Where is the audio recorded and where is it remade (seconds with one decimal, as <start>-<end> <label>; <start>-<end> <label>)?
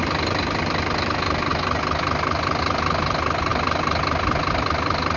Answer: 0.0-5.2 recorded